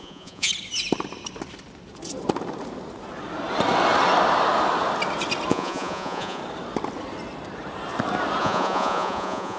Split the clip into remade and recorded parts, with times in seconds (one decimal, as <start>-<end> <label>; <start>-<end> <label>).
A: 0.0-0.5 remade; 0.5-5.5 recorded; 5.5-6.4 remade; 6.4-8.4 recorded; 8.4-9.6 remade